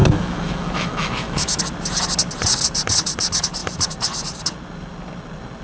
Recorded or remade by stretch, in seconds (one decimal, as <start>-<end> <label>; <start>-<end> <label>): 0.0-1.6 remade; 1.6-5.6 recorded